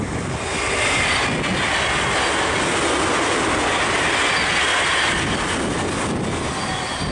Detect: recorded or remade recorded